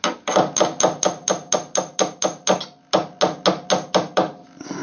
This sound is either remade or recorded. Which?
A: recorded